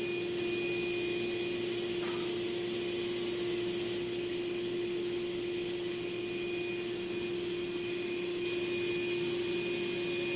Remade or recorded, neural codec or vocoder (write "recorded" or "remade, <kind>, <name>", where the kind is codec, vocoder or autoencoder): recorded